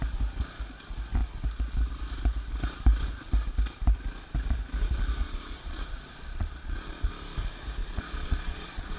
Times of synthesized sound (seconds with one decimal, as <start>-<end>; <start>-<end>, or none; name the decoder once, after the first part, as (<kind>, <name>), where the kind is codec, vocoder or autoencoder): 5.2-7.1 (vocoder, Vocos); 7.8-9.0